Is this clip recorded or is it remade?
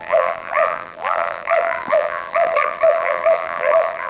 remade